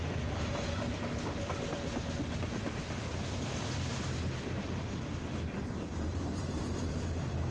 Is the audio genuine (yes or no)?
yes